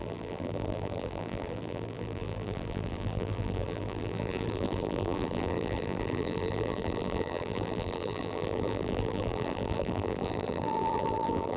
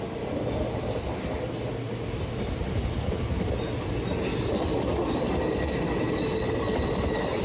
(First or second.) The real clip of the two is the second